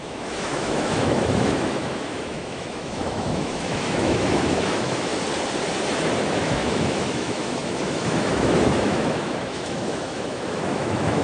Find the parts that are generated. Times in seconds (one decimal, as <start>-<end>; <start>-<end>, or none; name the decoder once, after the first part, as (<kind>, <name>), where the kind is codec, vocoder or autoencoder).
0.0-5.1 (autoencoder, DAC-VAE); 6.2-11.2